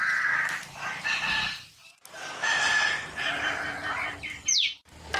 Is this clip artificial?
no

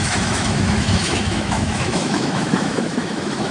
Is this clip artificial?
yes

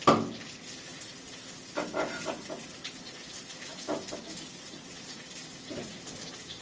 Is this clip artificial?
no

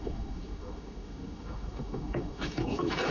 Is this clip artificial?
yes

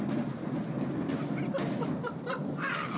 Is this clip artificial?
no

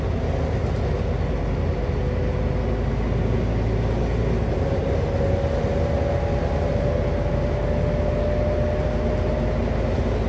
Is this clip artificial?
no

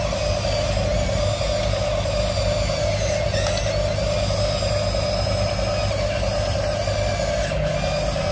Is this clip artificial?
no